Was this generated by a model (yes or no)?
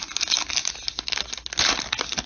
no